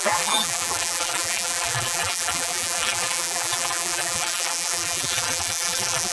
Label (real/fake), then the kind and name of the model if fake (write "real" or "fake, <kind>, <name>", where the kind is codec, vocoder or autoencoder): fake, vocoder, BigVGAN v2